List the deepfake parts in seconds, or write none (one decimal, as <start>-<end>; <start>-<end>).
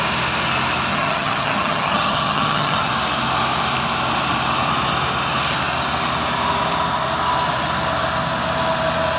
0.9-2.9